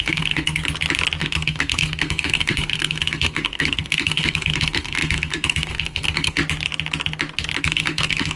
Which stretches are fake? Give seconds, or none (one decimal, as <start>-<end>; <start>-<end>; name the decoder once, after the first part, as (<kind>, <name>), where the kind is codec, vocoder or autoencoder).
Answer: 0.0-0.6 (codec, SNAC); 1.2-6.4; 7.6-8.4